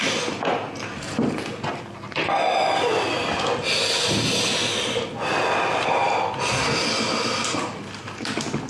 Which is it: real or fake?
real